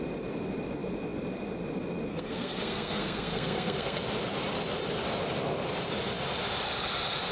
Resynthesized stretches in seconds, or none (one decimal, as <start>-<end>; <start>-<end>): 2.1-4.0